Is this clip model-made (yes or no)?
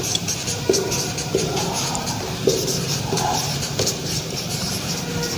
yes